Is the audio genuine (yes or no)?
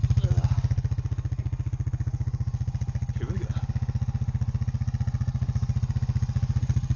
yes